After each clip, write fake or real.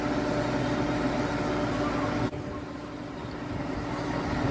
real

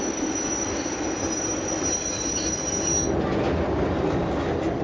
real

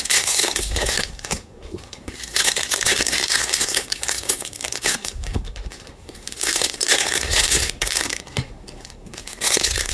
fake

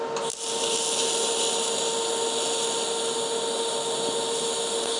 real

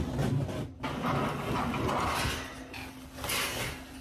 real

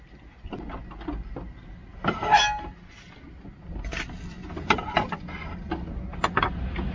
real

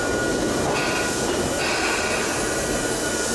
real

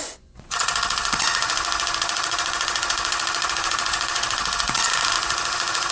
fake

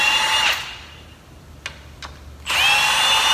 real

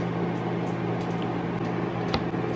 real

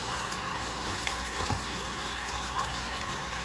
fake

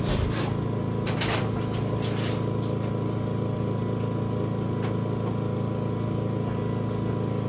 real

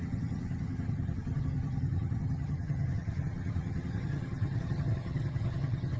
fake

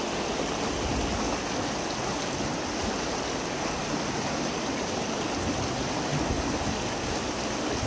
real